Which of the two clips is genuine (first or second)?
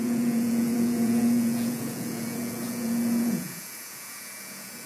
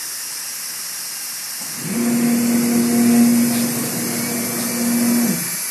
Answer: second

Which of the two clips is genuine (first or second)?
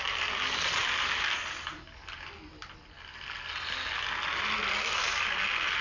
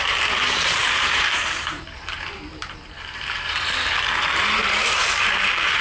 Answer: first